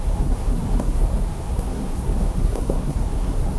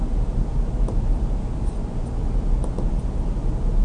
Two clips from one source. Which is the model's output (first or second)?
first